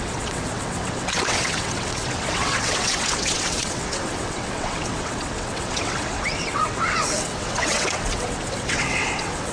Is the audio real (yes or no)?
no